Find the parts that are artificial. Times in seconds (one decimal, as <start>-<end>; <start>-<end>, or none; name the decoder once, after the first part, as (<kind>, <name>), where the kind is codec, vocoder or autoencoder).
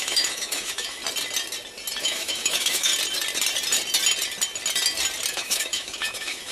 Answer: 0.0-1.0 (autoencoder, DAC-VAE); 2.0-2.9; 5.3-6.5